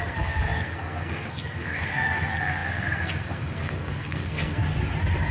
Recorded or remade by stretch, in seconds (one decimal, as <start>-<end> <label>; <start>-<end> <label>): 0.0-4.6 remade; 4.6-5.3 recorded